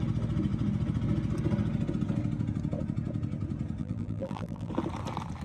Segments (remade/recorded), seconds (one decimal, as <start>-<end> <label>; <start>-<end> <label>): 0.0-3.8 recorded; 3.8-4.7 remade; 4.7-5.4 recorded